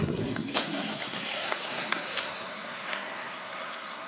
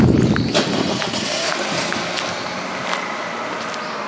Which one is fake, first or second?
first